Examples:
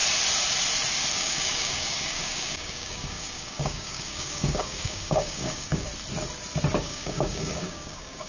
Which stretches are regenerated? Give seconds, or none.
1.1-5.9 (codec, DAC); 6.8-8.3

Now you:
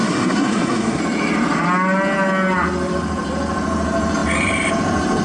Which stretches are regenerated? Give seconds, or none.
0.0-1.0 (codec, SNAC)

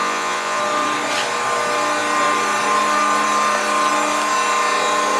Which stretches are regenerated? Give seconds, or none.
0.0-0.6 (vocoder, Vocos)

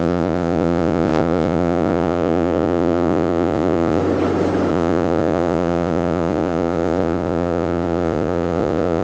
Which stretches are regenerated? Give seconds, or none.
0.0-4.0 (vocoder, Vocos); 4.7-9.0

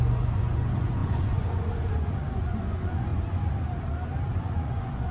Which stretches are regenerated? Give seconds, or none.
0.0-3.1 (vocoder, Vocos); 4.4-5.1